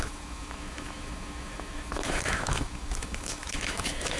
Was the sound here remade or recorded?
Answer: remade